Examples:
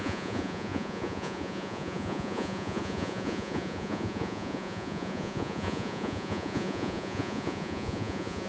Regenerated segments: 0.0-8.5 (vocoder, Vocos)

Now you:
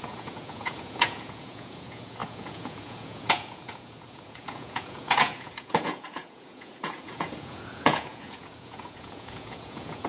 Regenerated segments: 0.0-10.1 (vocoder, Vocos)

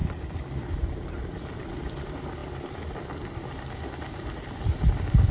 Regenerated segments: 0.5-5.3 (vocoder, BigVGAN v2)

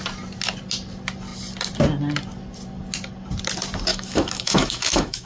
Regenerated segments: 3.9-5.3 (autoencoder, DAC-VAE)

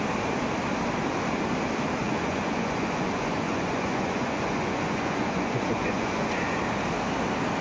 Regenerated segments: 2.0-6.6 (vocoder, Vocos)